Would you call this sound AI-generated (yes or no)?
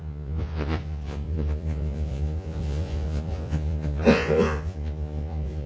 yes